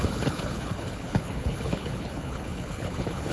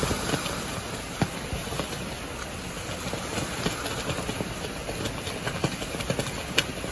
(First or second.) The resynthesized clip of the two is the first